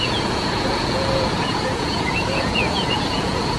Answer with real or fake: fake